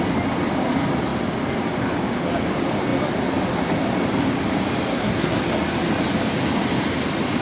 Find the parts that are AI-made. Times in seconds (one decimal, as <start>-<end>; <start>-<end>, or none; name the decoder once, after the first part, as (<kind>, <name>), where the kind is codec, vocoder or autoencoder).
4.9-5.4 (codec, SNAC)